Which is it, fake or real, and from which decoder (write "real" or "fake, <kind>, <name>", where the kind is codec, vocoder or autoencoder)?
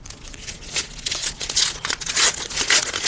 fake, vocoder, Vocos